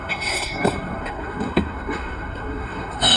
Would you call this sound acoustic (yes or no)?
no